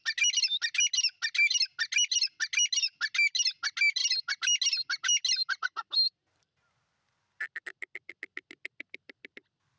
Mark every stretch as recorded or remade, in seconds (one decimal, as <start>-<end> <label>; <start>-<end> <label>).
0.0-9.8 recorded